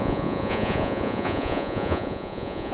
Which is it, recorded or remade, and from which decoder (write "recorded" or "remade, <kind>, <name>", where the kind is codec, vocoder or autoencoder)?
remade, vocoder, Vocos